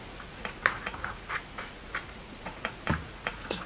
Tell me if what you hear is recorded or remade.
remade